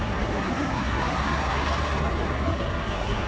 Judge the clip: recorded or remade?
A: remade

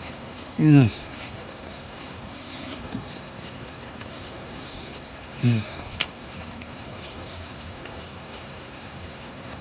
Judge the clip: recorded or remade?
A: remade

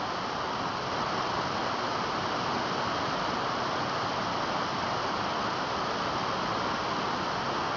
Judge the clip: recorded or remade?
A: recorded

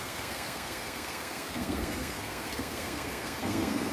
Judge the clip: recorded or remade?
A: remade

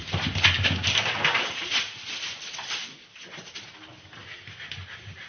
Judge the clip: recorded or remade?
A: recorded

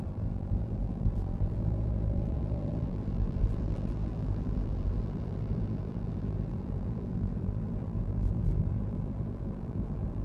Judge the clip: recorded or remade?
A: remade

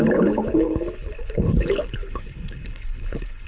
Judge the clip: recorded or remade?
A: remade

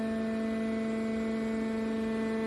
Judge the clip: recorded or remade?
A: recorded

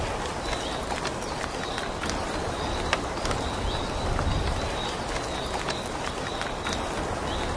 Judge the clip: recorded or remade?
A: recorded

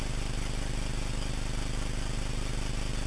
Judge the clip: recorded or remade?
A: recorded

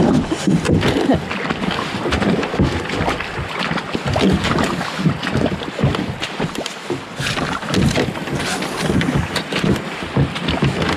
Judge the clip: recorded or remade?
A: recorded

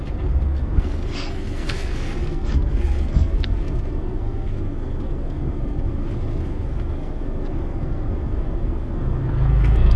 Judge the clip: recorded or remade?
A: remade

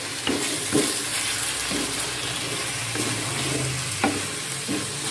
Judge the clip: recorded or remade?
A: recorded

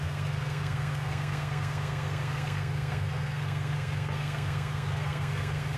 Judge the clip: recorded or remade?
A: remade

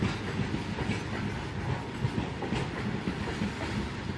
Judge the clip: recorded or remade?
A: recorded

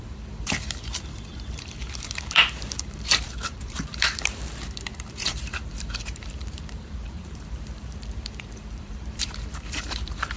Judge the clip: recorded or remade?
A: remade